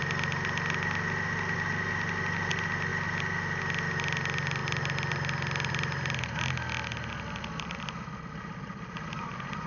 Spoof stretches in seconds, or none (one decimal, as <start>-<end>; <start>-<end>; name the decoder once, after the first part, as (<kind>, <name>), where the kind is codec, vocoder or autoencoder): none